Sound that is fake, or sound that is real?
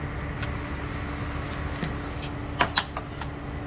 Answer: real